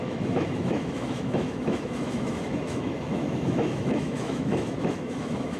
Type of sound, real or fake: fake